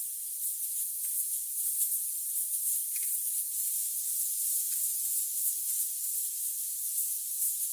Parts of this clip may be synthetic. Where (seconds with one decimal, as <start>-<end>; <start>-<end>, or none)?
1.5-3.3; 6.2-7.3